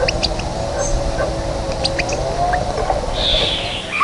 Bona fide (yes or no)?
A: yes